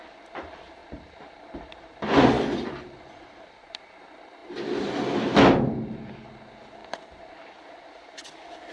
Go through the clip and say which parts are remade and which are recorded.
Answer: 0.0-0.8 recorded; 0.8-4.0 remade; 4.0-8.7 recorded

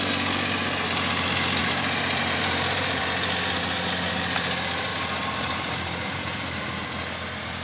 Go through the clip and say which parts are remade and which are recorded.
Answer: 0.0-1.6 recorded; 1.6-3.0 remade; 3.0-4.9 recorded; 4.9-6.6 remade; 6.6-7.6 recorded

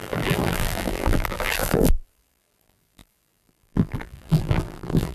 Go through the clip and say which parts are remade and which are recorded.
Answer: 0.0-5.1 remade

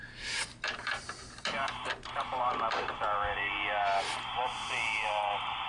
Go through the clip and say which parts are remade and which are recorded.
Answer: 0.0-2.5 remade; 2.5-5.7 recorded

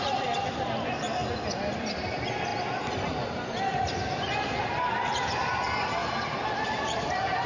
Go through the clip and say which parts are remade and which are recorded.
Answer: 0.0-1.2 remade; 1.2-1.7 recorded; 1.7-6.0 remade; 6.0-6.6 recorded; 6.6-7.5 remade

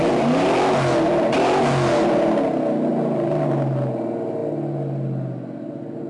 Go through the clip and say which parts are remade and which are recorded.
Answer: 0.0-2.9 recorded; 2.9-3.5 remade; 3.5-6.1 recorded

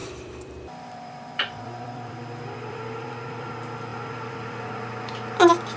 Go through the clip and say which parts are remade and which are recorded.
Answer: 0.0-3.5 remade; 3.5-3.9 recorded; 3.9-4.7 remade; 4.7-5.8 recorded